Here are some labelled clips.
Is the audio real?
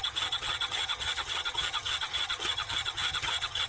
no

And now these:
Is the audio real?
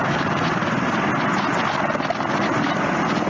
yes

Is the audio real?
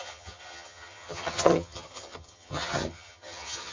no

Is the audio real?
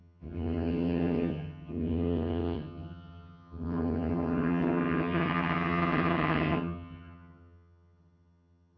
no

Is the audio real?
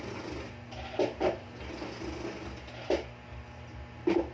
yes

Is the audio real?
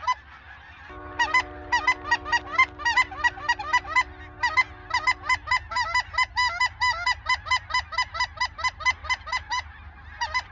yes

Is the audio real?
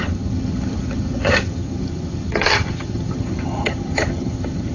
no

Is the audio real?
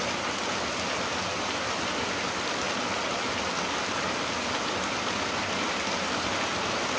yes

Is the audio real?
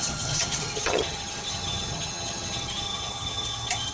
no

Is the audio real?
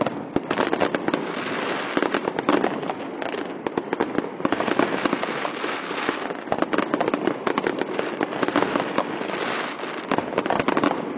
yes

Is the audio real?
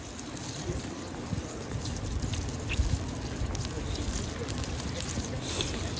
yes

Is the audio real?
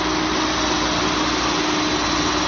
yes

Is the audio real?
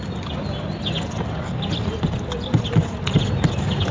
yes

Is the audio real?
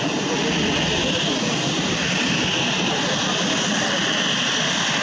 yes